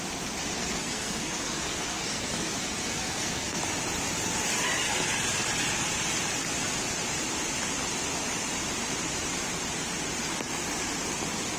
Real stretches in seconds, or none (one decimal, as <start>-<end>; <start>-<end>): 0.0-0.6; 3.6-11.6

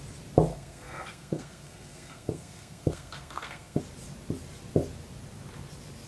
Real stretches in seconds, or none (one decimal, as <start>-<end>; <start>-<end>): 0.0-0.5; 3.8-6.1

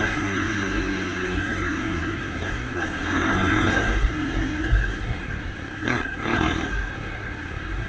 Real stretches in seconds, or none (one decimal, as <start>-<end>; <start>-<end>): none

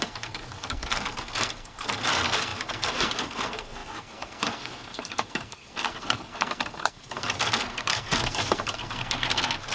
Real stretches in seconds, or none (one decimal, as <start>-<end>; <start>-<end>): none

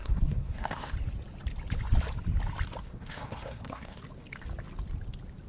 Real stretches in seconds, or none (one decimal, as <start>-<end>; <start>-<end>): 0.9-2.8; 4.0-5.5

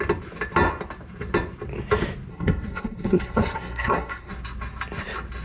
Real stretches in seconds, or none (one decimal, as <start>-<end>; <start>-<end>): 0.0-2.3; 4.3-5.4

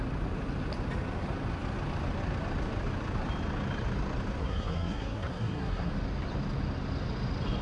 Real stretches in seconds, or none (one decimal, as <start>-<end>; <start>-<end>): 0.0-4.4; 5.9-7.6